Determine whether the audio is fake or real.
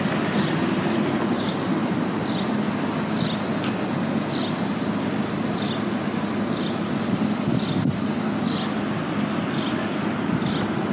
real